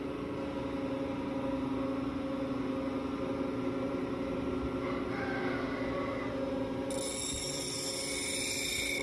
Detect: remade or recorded recorded